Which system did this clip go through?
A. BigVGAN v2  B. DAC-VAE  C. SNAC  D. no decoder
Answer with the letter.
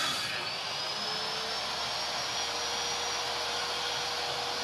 D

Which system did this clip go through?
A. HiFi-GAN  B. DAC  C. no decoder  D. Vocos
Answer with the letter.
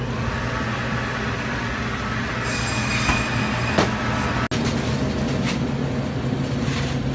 C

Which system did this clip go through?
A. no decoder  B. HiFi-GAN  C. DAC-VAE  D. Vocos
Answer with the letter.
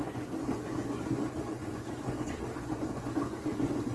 D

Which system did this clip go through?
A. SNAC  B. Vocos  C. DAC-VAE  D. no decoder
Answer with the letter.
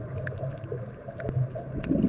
D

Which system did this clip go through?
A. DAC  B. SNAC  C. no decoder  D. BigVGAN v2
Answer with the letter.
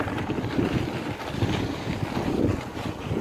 D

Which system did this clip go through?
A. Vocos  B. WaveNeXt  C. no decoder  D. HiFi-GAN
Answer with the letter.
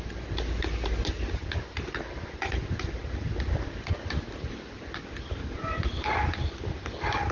C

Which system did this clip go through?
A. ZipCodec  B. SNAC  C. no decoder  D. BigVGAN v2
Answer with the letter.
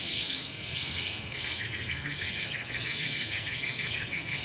B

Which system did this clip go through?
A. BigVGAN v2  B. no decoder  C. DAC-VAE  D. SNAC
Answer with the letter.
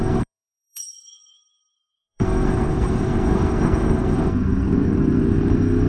D